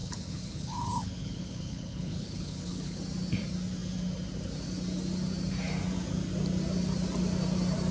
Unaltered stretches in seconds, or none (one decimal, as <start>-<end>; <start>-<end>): 3.0-7.9